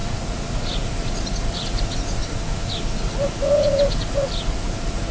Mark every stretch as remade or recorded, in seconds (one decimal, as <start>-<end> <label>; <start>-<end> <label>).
0.0-5.1 remade